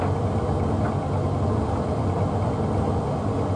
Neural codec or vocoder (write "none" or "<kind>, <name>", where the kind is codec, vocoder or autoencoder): none